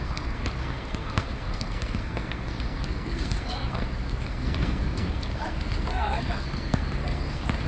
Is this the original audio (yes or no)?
no